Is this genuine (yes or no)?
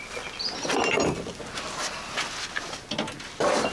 yes